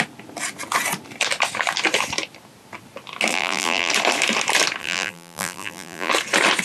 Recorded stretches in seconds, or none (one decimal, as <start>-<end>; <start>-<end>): 0.0-3.3; 3.9-4.8; 6.1-6.6